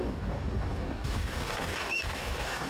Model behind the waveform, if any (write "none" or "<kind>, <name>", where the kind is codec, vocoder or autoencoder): codec, DAC